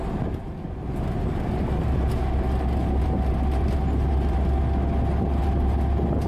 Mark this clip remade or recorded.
recorded